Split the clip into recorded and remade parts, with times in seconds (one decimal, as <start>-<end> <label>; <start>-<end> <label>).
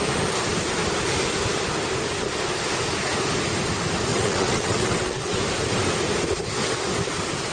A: 0.0-4.1 recorded; 4.1-5.4 remade; 5.4-7.5 recorded